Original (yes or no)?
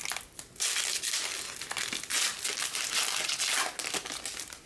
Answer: yes